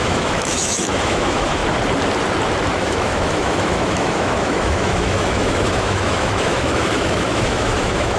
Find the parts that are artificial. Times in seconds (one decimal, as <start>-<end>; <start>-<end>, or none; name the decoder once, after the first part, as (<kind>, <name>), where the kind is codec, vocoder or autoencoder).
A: 0.0-1.6 (autoencoder, DAC-VAE); 2.8-8.2

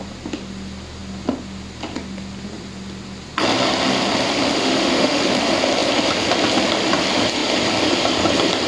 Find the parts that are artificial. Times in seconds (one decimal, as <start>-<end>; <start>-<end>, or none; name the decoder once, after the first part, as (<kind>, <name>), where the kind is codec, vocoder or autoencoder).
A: 4.5-5.2 (autoencoder, DAC-VAE)

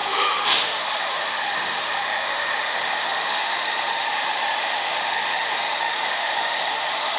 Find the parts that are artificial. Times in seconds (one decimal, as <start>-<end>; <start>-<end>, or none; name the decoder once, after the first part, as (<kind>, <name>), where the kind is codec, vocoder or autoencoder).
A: 0.0-7.2 (autoencoder, DAC-VAE)

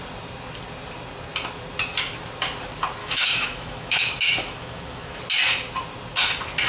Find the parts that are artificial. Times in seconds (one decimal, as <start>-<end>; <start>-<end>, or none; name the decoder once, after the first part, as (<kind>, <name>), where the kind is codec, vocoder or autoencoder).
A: 3.0-5.2 (autoencoder, DAC-VAE)

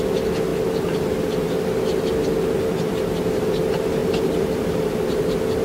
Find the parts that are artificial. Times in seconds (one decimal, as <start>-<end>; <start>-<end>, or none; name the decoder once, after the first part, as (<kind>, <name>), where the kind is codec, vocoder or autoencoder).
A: none